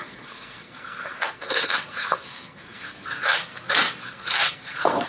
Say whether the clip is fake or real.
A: fake